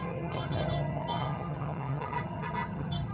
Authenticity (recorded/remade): remade